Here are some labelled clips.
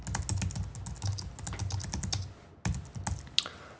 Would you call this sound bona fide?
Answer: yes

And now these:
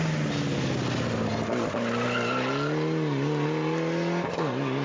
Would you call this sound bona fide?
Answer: yes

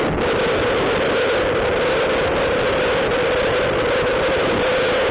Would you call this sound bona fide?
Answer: yes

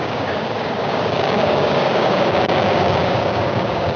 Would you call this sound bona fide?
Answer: no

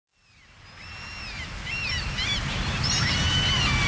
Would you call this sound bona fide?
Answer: yes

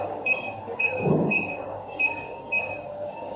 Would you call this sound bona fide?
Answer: no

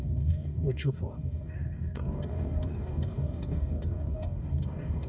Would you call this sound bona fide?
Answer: no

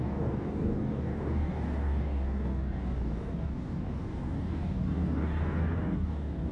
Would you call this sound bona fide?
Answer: no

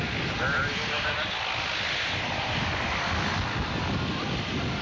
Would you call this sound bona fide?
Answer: yes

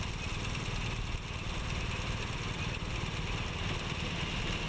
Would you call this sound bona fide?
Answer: yes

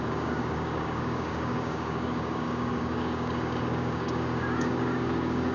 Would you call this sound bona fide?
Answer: no